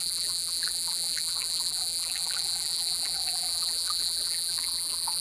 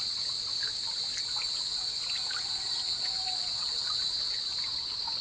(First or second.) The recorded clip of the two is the second